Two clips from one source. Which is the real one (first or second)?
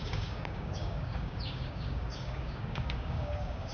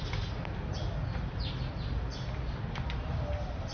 second